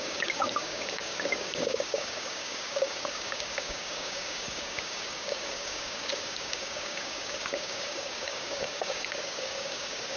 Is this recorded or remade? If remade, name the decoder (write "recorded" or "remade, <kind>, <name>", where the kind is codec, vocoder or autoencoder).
remade, codec, DAC